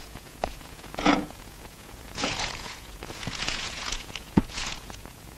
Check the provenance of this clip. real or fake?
fake